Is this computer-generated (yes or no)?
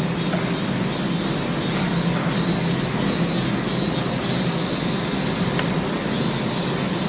no